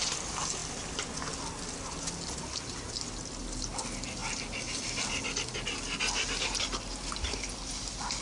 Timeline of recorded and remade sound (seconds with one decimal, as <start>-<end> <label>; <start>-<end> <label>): 0.0-8.2 recorded